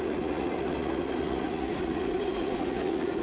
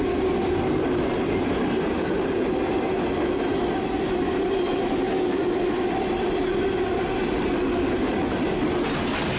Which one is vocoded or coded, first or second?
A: first